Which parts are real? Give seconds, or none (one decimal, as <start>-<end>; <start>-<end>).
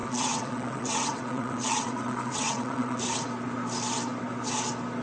3.0-5.0